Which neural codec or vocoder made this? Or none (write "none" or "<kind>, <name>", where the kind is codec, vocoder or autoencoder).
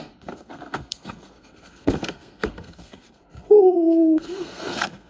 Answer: codec, SNAC